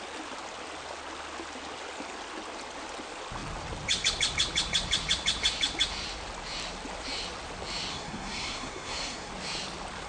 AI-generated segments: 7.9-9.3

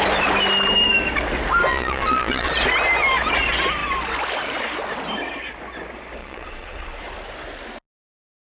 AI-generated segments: 1.7-2.5; 6.2-7.0